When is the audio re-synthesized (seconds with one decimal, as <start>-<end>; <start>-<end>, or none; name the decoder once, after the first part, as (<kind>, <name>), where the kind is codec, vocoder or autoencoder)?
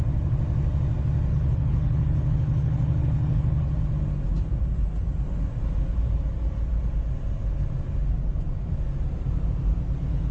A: 1.3-3.7 (codec, HILCodec)